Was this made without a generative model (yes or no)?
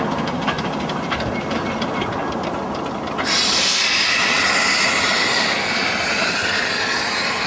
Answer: yes